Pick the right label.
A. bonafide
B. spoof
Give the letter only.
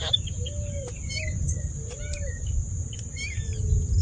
A